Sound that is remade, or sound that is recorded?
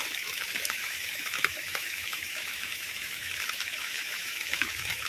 remade